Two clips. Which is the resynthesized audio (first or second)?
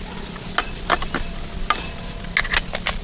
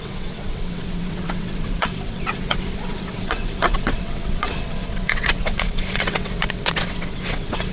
second